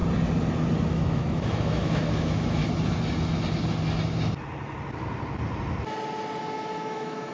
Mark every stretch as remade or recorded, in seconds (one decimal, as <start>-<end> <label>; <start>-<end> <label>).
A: 0.0-0.9 recorded; 0.9-2.6 remade; 2.6-6.4 recorded; 6.4-7.3 remade